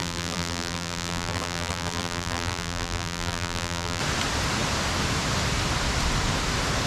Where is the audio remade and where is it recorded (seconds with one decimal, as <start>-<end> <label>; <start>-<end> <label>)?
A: 0.0-4.0 remade; 4.0-6.9 recorded

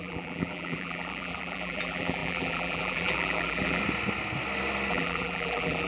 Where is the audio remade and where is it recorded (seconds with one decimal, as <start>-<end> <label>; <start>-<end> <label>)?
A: 0.0-3.8 remade; 3.8-4.9 recorded; 4.9-5.9 remade

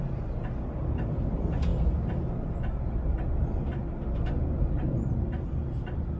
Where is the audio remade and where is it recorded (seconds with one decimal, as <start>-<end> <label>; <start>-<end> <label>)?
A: 0.0-6.2 recorded

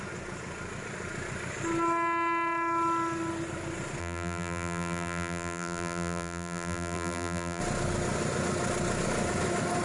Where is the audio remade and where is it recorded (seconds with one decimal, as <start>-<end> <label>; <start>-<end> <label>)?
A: 0.0-4.0 recorded; 4.0-7.6 remade; 7.6-9.8 recorded

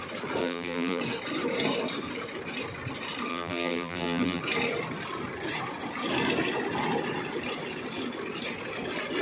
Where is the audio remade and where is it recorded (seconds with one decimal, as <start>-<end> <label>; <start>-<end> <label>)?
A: 0.0-0.4 recorded; 0.4-1.0 remade; 1.0-3.3 recorded; 3.3-4.4 remade; 4.4-9.2 recorded

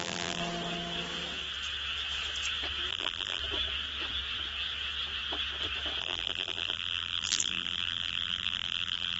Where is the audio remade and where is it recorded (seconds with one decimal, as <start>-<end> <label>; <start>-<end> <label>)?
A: 0.0-0.4 remade; 0.4-2.9 recorded; 2.9-3.4 remade; 3.4-6.0 recorded; 6.0-9.2 remade

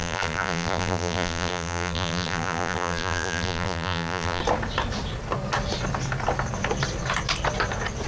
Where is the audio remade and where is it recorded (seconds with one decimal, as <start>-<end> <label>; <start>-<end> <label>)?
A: 0.0-4.4 remade; 4.4-8.1 recorded

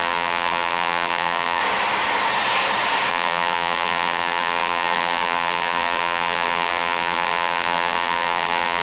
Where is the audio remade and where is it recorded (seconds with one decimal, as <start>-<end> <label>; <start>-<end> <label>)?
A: 0.0-1.6 remade; 1.6-3.1 recorded; 3.1-8.8 remade